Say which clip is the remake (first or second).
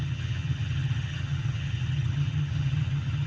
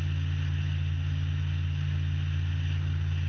first